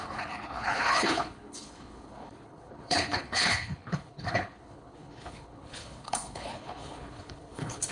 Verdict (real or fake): fake